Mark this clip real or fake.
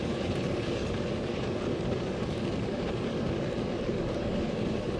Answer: fake